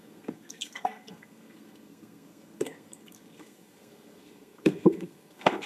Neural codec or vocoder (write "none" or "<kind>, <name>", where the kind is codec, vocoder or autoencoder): codec, SNAC